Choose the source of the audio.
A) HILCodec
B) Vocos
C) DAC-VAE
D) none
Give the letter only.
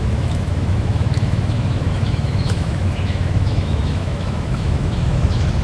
C